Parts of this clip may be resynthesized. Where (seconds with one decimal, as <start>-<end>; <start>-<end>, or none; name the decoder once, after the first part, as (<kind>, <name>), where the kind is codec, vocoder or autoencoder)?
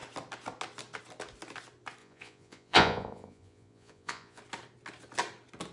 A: 2.0-4.4 (vocoder, Vocos)